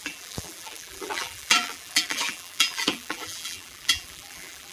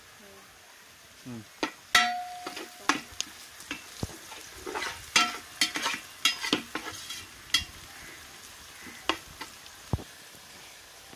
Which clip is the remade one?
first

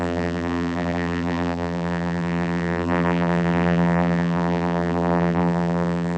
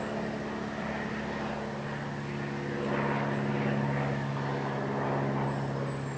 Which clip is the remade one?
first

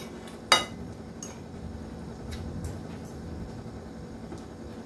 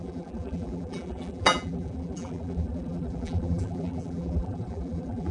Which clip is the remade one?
second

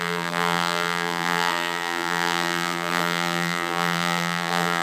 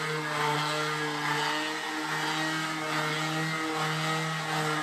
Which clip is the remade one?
first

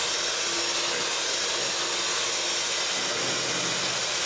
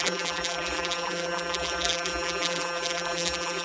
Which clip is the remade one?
second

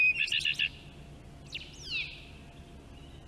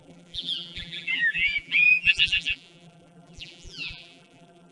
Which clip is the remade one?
second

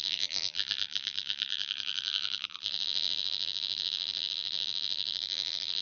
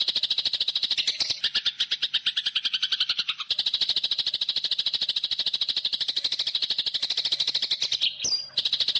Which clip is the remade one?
first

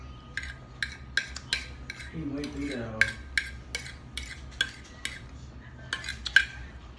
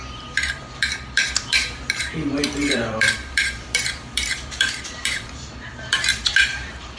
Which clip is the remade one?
second